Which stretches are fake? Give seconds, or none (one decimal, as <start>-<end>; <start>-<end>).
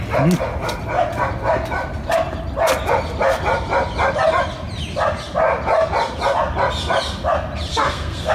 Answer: 7.7-8.3